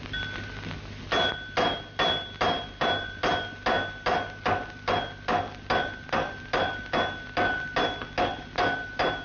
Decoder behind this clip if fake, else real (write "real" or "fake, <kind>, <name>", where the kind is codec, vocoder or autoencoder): real